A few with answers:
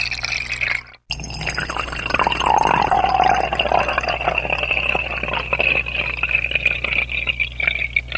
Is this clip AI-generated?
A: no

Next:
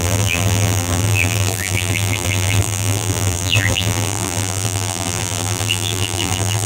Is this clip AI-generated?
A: yes